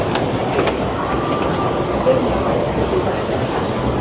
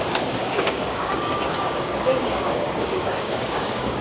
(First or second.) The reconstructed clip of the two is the second